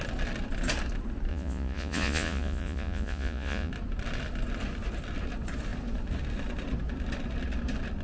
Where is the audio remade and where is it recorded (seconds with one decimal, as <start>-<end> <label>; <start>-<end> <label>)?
0.0-1.3 recorded; 1.3-3.7 remade; 3.7-8.0 recorded